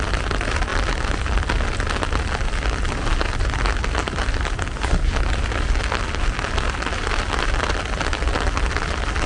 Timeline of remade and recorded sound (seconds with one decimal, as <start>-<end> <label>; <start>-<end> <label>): 0.0-9.3 recorded